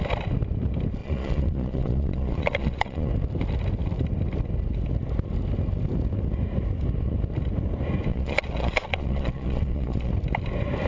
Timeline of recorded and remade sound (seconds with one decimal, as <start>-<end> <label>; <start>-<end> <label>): 0.0-1.0 recorded; 1.0-3.1 remade; 3.1-8.1 recorded; 8.1-10.1 remade; 10.1-10.9 recorded